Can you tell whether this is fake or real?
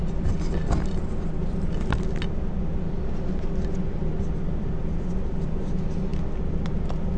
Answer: real